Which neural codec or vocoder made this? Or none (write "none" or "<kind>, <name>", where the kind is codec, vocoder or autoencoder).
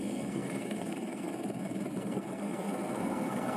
codec, SNAC